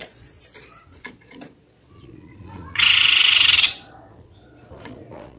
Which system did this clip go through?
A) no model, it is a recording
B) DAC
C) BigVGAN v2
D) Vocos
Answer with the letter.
D